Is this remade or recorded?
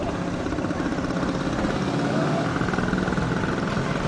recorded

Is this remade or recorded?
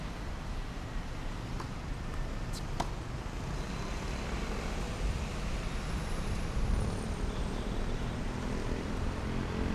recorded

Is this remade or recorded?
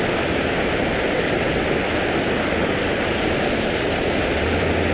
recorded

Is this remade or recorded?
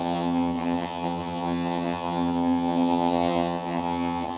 remade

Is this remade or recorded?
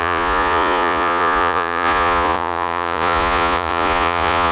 remade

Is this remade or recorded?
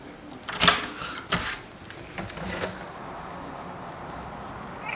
recorded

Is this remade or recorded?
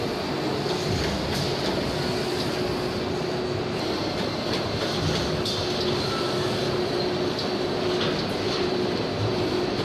recorded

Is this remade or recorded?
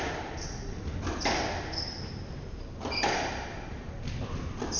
recorded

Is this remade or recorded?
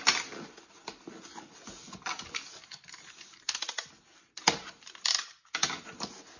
recorded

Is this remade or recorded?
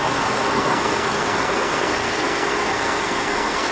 remade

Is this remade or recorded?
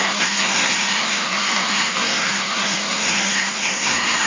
remade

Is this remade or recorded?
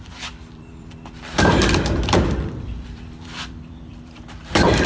remade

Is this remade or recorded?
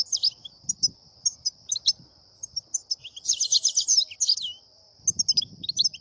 recorded